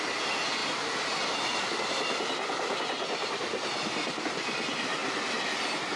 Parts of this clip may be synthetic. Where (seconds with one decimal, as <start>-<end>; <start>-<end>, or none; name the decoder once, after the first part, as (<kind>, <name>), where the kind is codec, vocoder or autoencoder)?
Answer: none